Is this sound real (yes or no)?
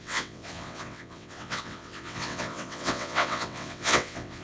no